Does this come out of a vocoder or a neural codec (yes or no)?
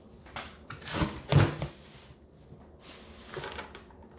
no